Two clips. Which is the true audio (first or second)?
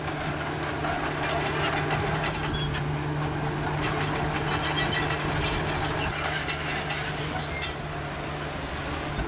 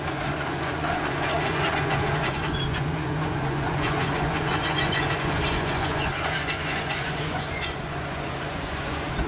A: first